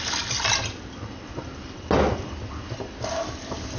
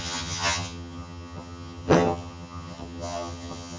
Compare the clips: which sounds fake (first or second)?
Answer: second